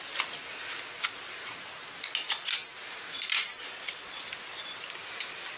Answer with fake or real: real